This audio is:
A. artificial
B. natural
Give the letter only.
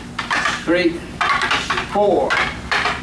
B